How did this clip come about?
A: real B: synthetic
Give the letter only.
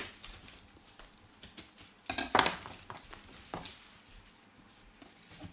A